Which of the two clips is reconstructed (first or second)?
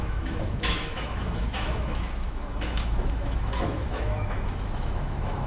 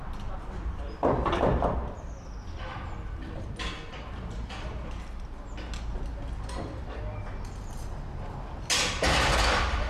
first